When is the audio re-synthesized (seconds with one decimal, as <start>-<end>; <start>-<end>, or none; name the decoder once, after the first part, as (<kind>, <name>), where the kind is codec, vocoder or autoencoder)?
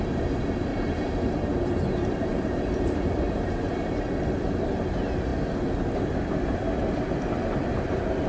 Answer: 0.7-4.0 (vocoder, BigVGAN v2)